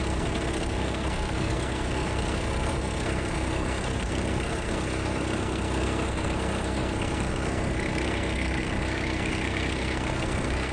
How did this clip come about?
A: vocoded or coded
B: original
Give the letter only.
A